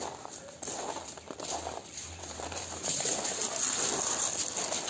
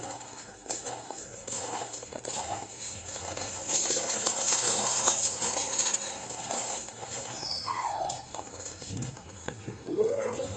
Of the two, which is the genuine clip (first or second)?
first